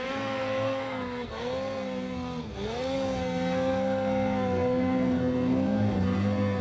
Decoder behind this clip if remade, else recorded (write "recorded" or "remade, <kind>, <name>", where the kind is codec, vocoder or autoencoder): remade, codec, SNAC